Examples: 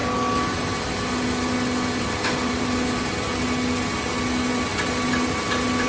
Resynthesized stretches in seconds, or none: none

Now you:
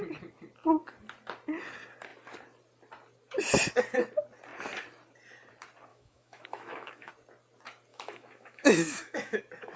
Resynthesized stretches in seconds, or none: 5.9-7.1; 7.9-9.4

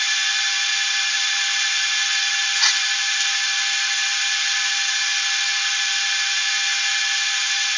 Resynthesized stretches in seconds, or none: 0.0-5.9

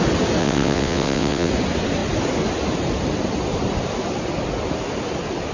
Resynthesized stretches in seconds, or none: 0.4-1.5